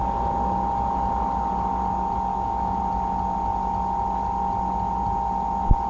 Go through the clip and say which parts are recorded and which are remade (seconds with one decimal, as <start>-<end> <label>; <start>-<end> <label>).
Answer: 0.0-2.3 recorded; 2.3-2.8 remade; 2.8-5.9 recorded